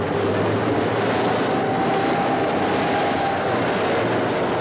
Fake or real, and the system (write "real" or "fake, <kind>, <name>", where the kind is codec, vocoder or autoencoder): real